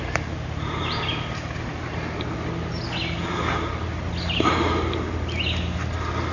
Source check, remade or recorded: recorded